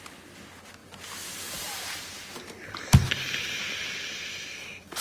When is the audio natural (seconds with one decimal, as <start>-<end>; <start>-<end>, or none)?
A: 0.0-5.0